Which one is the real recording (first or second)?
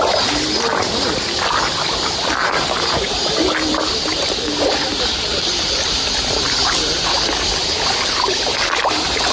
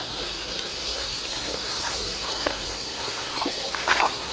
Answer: first